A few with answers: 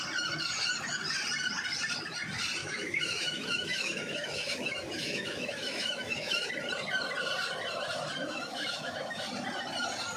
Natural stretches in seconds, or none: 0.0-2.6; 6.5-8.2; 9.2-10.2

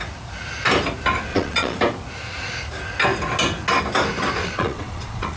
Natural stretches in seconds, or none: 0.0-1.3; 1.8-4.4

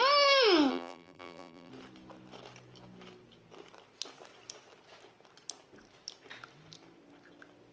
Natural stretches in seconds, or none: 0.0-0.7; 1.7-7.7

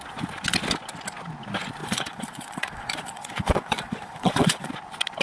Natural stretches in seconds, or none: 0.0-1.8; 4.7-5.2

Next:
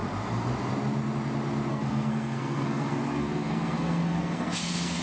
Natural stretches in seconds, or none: 0.0-1.7

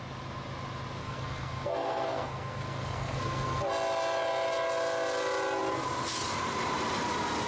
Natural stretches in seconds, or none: 0.0-1.0; 3.7-7.5